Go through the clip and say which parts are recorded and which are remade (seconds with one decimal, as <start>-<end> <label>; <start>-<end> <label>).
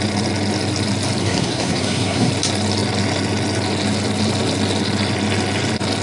0.0-1.2 recorded; 1.2-2.3 remade; 2.3-6.0 recorded